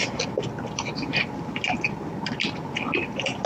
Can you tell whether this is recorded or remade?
recorded